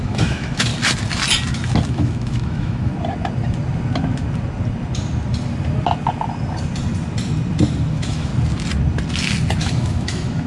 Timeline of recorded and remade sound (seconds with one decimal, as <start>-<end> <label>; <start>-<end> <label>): 0.0-0.7 remade; 0.7-1.9 recorded; 1.9-2.9 remade; 2.9-7.9 recorded; 7.9-8.3 remade; 8.3-9.6 recorded; 9.6-10.5 remade